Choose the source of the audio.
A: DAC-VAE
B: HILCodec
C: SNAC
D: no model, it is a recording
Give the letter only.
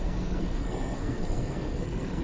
C